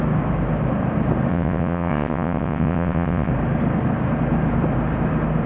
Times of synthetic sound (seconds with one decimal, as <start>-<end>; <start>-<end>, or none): 1.3-3.3